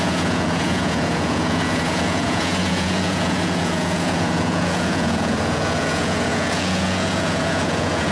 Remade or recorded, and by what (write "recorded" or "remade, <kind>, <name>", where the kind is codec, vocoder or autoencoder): remade, vocoder, Vocos